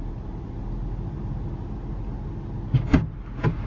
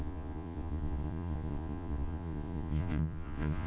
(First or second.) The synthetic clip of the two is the second